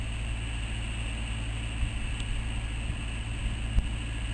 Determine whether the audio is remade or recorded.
recorded